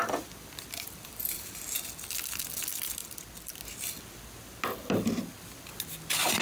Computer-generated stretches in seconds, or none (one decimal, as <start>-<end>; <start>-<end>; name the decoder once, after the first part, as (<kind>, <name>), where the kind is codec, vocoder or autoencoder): 0.0-2.1 (vocoder, BigVGAN v2); 3.0-3.6